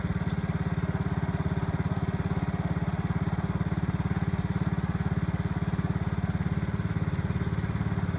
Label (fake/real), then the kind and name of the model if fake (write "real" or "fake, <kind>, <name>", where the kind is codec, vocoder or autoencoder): real